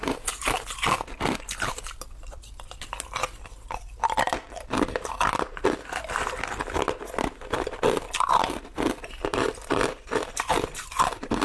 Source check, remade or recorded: remade